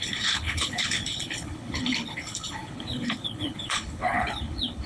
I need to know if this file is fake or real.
fake